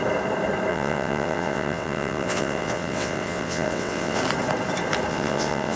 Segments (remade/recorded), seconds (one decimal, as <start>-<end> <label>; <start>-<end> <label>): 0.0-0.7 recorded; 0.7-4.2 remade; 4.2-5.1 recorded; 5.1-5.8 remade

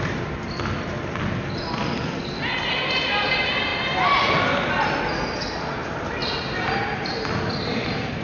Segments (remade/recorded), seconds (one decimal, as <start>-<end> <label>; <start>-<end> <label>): 0.0-6.2 recorded; 6.2-7.1 remade; 7.1-8.2 recorded

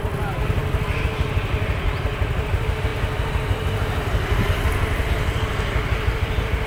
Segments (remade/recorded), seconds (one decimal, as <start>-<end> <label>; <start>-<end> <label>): 0.0-6.7 recorded

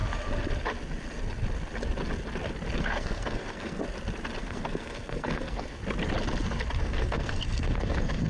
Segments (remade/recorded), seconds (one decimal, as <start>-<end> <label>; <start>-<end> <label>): 0.0-2.8 recorded; 2.8-3.8 remade; 3.8-4.4 recorded; 4.4-5.8 remade; 5.8-6.8 recorded; 6.8-8.3 remade